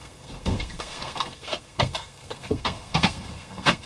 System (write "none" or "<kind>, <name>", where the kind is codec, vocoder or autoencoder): codec, SNAC